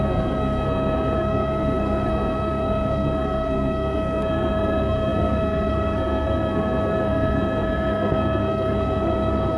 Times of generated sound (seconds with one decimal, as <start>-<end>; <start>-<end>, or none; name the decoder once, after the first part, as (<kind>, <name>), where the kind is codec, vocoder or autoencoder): 0.0-9.6 (codec, SNAC)